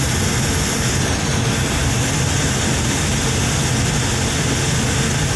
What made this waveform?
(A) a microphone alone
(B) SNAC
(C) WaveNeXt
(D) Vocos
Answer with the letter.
A